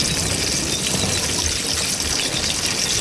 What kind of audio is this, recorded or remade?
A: recorded